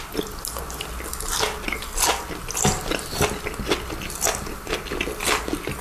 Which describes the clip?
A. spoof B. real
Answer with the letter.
B